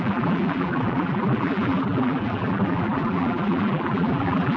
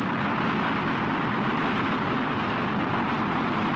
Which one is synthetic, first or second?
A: first